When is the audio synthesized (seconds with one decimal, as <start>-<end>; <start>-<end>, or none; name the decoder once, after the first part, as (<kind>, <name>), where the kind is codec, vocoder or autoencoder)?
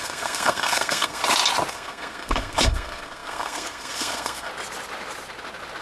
0.0-1.2 (codec, SNAC); 1.7-4.5